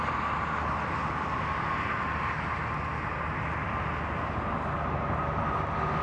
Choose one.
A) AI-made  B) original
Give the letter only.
B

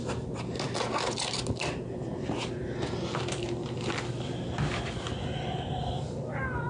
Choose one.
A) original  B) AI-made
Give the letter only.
A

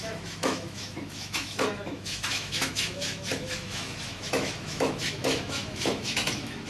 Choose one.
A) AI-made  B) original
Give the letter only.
A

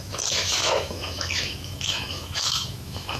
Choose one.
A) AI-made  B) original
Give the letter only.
A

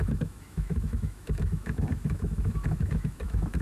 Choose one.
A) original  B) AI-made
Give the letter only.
B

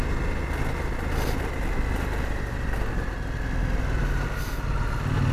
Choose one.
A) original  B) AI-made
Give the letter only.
A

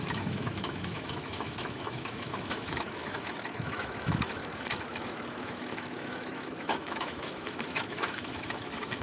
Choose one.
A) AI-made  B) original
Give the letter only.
A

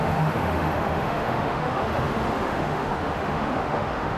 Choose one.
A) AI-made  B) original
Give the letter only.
A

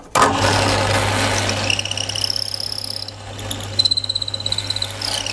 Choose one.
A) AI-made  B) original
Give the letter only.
B